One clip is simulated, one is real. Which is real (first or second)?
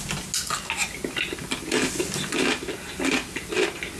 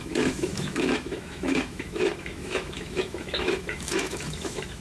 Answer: first